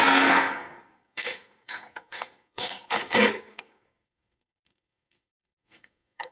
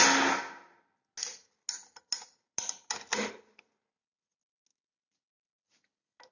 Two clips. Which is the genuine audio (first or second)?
second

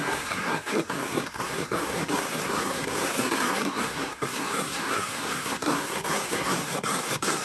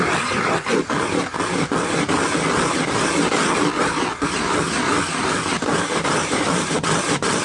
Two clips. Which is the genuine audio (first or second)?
second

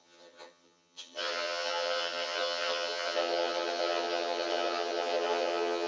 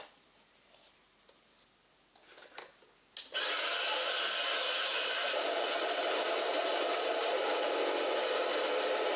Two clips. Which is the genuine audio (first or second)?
second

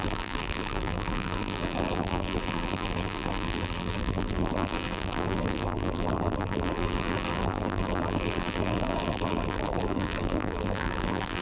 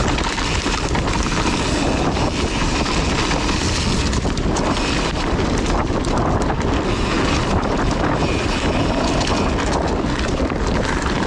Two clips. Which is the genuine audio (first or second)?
second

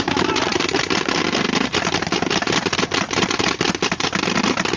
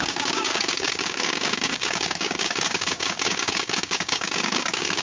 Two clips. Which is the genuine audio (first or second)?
first